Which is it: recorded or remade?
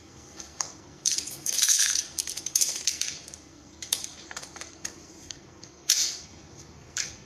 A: remade